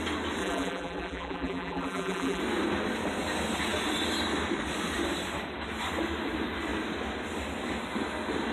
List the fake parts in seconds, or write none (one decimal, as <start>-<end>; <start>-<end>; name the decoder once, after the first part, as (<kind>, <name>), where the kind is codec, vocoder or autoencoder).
0.4-2.4 (vocoder, BigVGAN v2)